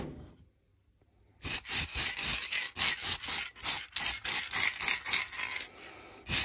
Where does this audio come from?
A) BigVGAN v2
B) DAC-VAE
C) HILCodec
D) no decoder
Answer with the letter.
D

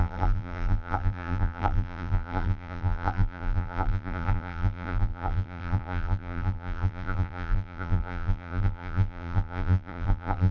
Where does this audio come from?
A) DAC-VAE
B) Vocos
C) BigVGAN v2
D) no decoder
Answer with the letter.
C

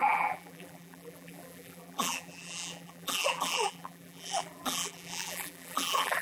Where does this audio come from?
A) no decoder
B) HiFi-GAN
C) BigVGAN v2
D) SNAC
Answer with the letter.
C